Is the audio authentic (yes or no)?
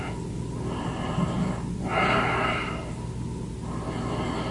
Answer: yes